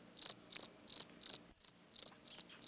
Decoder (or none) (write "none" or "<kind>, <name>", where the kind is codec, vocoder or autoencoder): none